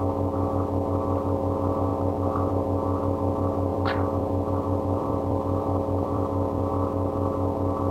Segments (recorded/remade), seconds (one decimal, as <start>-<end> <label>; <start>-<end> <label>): 0.0-3.7 recorded; 3.7-6.7 remade; 6.7-7.9 recorded